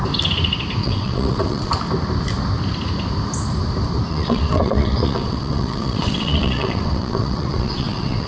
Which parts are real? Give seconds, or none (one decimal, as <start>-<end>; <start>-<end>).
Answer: 0.0-0.8; 1.7-4.1